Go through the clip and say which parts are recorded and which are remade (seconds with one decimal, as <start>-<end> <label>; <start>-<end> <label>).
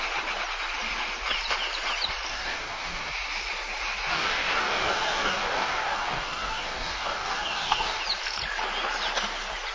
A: 0.0-2.3 recorded; 2.3-3.1 remade; 3.1-4.1 recorded; 4.1-8.0 remade; 8.0-9.7 recorded